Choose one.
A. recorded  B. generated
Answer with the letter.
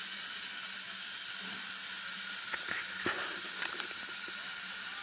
A